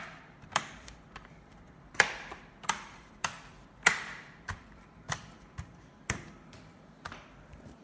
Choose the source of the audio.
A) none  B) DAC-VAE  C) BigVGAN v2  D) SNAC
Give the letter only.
C